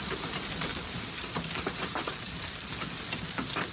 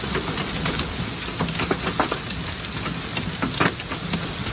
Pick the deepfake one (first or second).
first